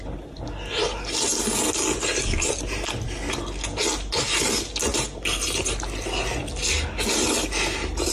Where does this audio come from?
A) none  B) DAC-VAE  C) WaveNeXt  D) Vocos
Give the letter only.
A